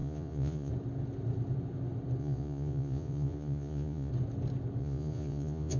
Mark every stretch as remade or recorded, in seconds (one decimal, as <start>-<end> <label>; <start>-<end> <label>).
0.0-0.7 remade; 0.7-2.2 recorded; 2.2-4.1 remade; 4.1-4.8 recorded; 4.8-5.8 remade